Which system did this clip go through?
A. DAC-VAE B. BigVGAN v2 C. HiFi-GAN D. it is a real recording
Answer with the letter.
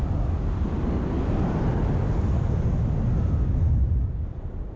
D